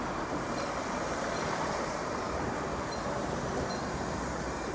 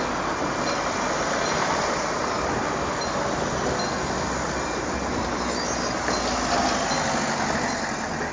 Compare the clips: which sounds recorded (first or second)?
second